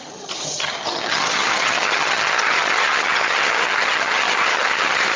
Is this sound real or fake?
fake